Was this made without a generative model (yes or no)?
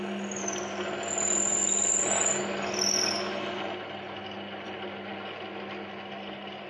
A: yes